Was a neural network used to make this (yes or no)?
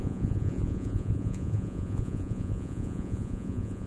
yes